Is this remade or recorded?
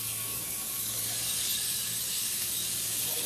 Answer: remade